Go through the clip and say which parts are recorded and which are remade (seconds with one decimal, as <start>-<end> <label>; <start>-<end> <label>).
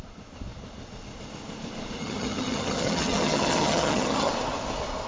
0.0-2.0 recorded; 2.0-4.3 remade; 4.3-5.1 recorded